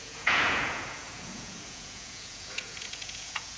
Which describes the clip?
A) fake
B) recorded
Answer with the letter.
A